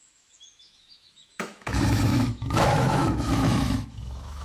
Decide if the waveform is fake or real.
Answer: fake